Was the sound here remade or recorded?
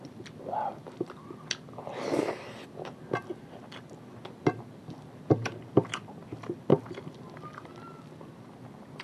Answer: recorded